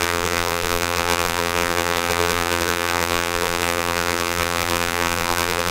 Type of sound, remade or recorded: remade